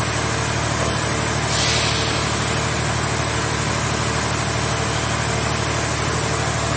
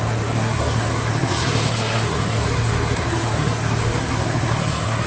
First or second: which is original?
first